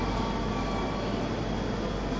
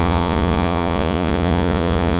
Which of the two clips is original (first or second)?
first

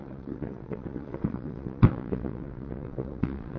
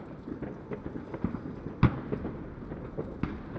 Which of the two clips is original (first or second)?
second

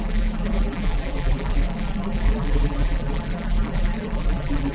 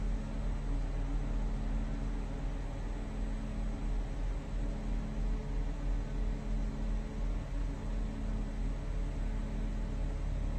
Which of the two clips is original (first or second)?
second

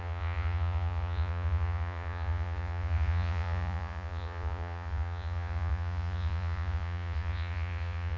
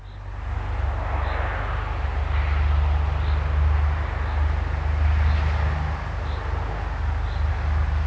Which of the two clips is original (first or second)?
second